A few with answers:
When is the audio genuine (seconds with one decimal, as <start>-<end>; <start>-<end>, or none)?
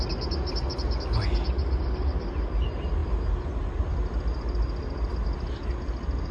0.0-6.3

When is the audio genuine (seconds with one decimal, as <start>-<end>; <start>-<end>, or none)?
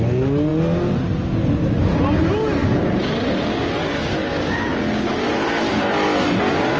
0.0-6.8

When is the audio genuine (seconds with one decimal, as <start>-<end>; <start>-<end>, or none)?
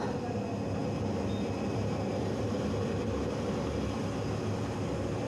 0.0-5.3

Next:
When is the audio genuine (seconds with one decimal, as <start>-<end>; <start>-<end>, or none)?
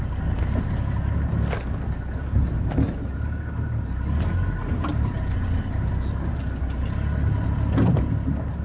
0.0-8.6